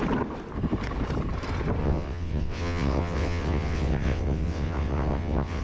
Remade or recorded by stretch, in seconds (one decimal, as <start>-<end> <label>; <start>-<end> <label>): 0.0-1.8 recorded; 1.8-5.6 remade